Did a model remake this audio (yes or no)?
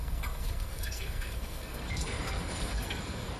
yes